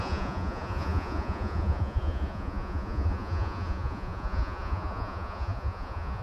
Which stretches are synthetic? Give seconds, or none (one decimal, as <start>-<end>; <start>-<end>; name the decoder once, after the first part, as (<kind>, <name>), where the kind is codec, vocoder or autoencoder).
0.0-6.2 (vocoder, Vocos)